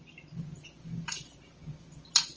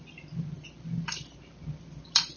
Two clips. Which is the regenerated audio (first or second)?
second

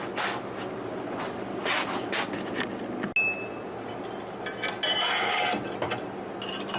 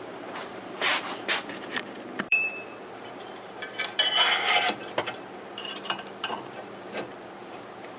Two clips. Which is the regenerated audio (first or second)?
second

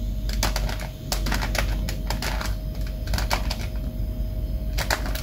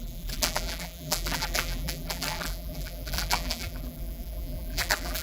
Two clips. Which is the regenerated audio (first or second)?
second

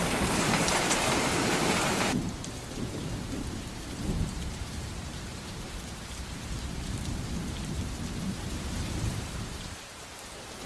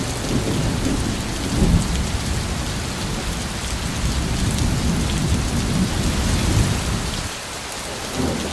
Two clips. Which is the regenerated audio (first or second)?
first